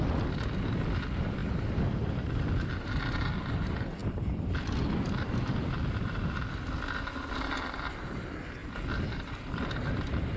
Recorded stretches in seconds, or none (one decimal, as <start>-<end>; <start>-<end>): 0.0-10.4